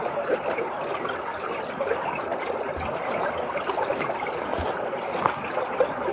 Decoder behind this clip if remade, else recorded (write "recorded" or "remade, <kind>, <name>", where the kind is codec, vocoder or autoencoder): recorded